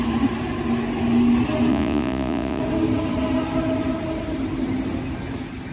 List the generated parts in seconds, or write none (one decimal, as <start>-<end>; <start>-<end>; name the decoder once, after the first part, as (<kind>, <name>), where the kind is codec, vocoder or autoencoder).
1.7-2.6 (vocoder, Vocos)